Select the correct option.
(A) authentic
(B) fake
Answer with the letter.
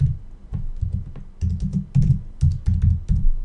A